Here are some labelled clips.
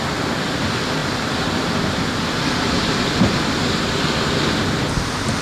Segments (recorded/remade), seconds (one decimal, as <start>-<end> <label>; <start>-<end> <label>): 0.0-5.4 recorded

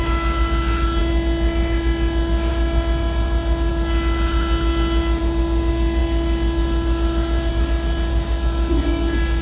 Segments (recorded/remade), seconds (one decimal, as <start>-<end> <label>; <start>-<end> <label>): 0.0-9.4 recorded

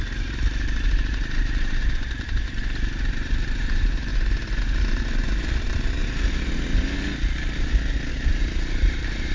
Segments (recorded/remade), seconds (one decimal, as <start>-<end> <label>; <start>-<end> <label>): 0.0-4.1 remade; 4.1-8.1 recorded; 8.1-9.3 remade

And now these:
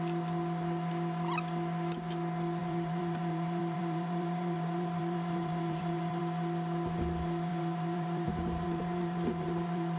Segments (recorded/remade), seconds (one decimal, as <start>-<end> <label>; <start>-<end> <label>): 0.0-2.6 recorded; 2.6-6.2 remade; 6.2-7.5 recorded; 7.5-10.0 remade